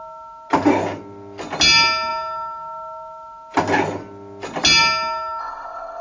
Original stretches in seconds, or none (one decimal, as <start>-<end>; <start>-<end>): 0.0-5.4